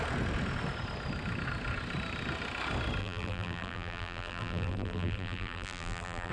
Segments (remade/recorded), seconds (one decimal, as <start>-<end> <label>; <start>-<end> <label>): 0.0-3.0 recorded; 3.0-6.3 remade